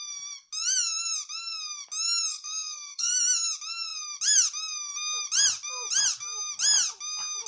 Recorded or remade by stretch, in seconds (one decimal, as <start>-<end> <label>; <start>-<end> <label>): 0.0-2.3 recorded; 2.3-3.1 remade; 3.1-7.5 recorded